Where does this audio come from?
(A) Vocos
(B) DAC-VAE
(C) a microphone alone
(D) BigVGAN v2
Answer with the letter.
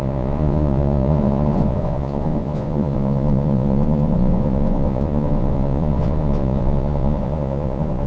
A